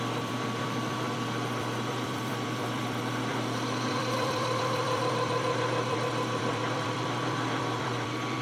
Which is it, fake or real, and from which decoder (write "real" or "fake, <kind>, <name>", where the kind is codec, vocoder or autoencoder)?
fake, vocoder, BigVGAN v2